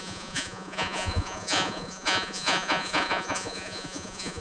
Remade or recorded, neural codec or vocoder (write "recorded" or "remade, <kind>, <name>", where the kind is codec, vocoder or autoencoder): remade, vocoder, Vocos